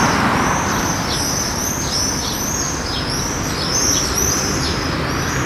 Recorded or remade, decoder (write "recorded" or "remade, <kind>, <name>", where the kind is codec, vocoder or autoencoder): recorded